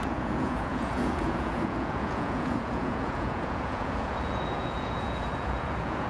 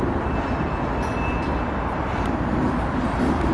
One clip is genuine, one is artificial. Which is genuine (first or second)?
second